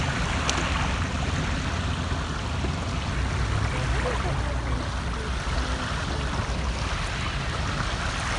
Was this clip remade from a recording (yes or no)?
no